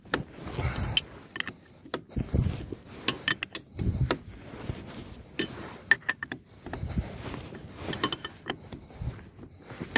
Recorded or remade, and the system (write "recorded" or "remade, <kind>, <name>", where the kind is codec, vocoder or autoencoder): recorded